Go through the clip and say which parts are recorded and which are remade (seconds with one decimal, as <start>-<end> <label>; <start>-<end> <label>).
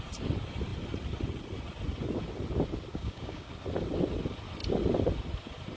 0.0-2.9 recorded; 2.9-3.5 remade; 3.5-5.8 recorded